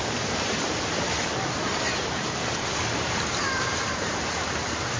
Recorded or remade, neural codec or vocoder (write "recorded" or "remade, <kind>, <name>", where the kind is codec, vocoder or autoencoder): remade, vocoder, BigVGAN v2